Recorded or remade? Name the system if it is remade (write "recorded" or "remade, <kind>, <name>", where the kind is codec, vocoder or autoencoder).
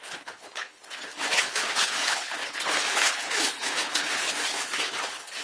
remade, codec, HILCodec